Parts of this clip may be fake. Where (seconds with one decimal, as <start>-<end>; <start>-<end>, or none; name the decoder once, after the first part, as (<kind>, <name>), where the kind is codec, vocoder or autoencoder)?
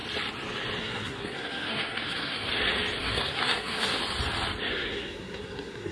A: 0.8-2.5 (codec, SNAC); 3.0-4.0; 4.7-5.9